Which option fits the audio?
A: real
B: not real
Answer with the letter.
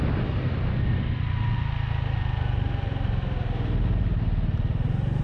A